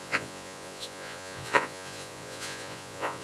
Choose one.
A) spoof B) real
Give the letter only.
A